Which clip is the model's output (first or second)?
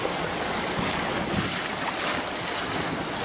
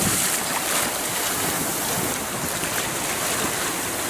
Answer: second